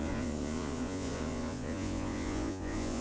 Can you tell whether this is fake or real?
fake